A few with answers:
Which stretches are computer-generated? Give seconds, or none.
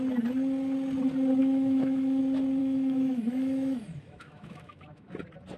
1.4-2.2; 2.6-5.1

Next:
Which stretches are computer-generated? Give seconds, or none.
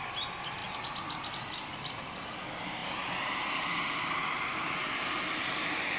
4.2-4.7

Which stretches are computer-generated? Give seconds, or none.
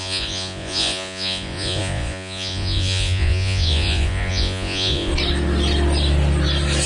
0.0-5.1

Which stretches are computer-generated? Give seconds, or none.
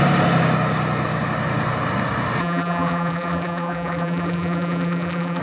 2.4-5.4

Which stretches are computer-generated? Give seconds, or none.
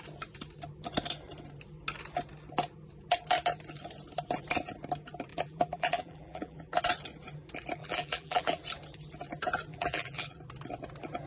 5.3-6.8; 7.8-8.6; 9.7-10.4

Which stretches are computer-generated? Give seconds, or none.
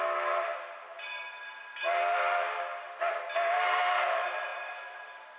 none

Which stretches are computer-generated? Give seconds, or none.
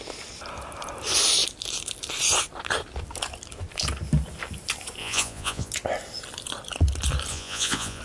5.0-5.7; 7.3-8.0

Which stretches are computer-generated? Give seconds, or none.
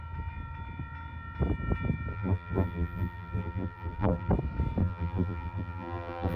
2.1-4.3; 4.8-6.4